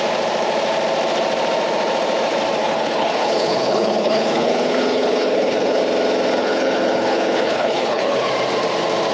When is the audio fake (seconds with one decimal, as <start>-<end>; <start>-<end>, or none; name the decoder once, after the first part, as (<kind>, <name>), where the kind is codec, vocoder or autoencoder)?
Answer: 2.6-5.8 (codec, HILCodec); 6.4-8.3